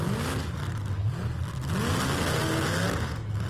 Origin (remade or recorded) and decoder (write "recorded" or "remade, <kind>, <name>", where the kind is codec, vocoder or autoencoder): recorded